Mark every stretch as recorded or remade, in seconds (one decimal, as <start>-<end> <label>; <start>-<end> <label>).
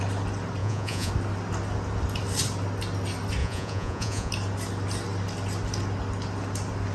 0.0-0.6 recorded; 0.6-1.1 remade; 1.1-3.4 recorded; 3.4-4.3 remade; 4.3-6.9 recorded